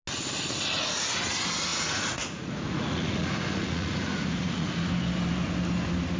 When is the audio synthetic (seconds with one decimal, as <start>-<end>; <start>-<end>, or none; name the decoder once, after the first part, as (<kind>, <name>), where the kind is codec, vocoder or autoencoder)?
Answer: 1.7-4.9 (vocoder, Vocos)